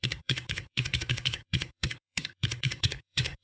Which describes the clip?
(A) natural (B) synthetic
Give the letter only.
B